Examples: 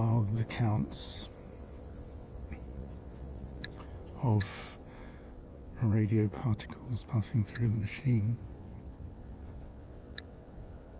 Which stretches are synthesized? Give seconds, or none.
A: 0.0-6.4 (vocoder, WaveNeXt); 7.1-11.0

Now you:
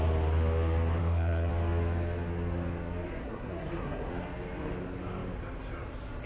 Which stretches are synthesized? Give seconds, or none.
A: 1.0-1.5 (codec, SNAC); 3.2-4.1

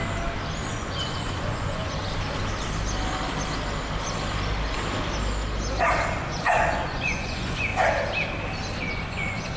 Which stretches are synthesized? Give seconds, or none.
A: 0.7-2.0 (vocoder, Vocos); 6.1-7.7; 8.8-9.6

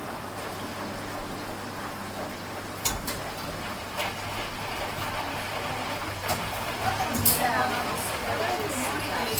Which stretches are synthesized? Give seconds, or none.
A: 6.2-8.4 (vocoder, BigVGAN v2)